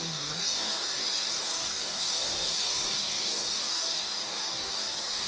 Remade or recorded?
remade